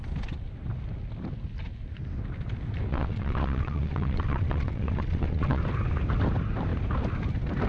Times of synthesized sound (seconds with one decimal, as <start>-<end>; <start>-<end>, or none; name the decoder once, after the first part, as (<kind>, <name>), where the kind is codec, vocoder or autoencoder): 2.9-5.6 (vocoder, WaveNeXt)